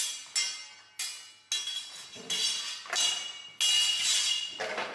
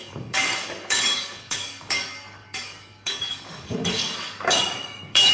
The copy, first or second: second